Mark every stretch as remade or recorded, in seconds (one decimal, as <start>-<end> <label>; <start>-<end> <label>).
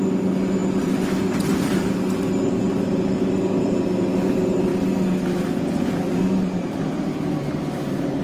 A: 0.0-4.7 remade; 4.7-6.2 recorded; 6.2-8.2 remade